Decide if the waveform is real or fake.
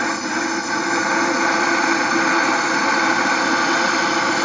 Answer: real